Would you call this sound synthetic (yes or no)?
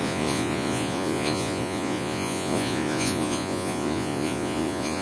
yes